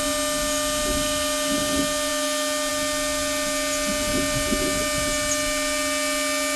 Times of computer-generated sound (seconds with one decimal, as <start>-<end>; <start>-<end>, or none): none